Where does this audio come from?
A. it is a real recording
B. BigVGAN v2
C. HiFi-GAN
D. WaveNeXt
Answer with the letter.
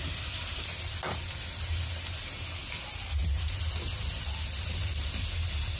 A